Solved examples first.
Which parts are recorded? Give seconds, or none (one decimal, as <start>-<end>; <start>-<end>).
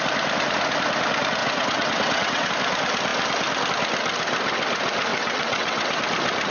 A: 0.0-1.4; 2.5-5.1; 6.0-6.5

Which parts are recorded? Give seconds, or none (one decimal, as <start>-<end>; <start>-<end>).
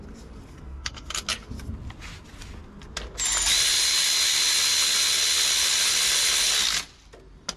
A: 0.0-0.5; 1.1-7.6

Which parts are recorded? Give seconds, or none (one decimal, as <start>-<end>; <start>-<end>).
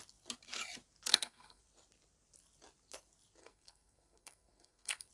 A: 0.0-1.1; 1.6-3.4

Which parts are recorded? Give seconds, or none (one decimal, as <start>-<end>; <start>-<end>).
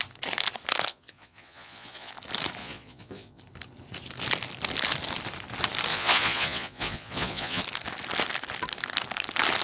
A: 0.0-0.9; 2.1-2.6; 3.4-5.9; 7.6-9.6